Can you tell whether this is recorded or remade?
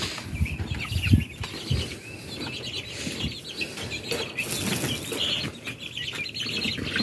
recorded